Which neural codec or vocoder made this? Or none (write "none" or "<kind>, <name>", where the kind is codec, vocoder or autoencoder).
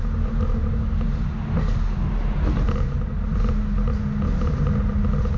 none